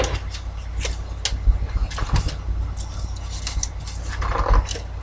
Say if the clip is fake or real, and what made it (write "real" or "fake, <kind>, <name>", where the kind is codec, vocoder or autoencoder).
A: real